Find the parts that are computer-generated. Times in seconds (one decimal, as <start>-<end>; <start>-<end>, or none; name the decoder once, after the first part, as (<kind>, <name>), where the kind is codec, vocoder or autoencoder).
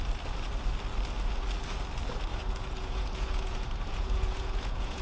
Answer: 2.3-5.0 (vocoder, Vocos)